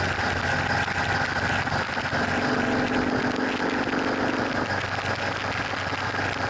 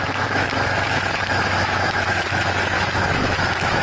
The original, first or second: first